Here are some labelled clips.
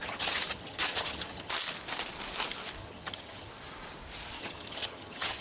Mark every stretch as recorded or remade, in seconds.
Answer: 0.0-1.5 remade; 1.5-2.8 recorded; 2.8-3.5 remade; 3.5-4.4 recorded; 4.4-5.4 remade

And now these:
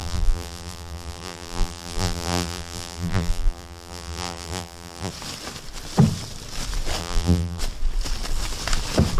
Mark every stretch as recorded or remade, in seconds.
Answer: 0.0-5.1 remade; 5.1-7.0 recorded; 7.0-7.6 remade; 7.6-9.2 recorded

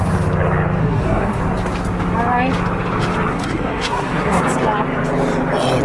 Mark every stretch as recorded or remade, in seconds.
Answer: 0.0-0.8 recorded; 0.8-1.4 remade; 1.4-3.3 recorded; 3.3-4.4 remade; 4.4-5.8 recorded

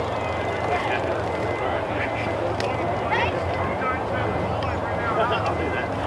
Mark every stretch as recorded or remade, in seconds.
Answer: 0.0-6.1 recorded

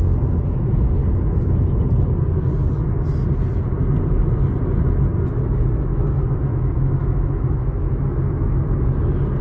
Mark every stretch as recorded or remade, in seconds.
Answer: 0.0-1.0 recorded; 1.0-1.8 remade; 1.8-5.9 recorded; 5.9-8.6 remade; 8.6-9.4 recorded

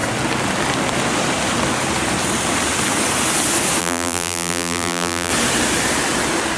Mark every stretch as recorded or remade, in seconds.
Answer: 0.0-3.8 recorded; 3.8-5.3 remade; 5.3-6.6 recorded

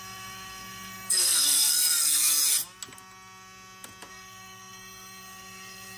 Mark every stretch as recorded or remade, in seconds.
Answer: 0.0-2.4 remade; 2.4-4.1 recorded; 4.1-6.0 remade

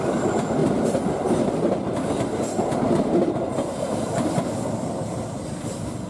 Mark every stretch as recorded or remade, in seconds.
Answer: 0.0-6.1 recorded